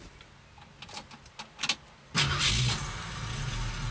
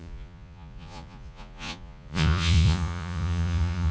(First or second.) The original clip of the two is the first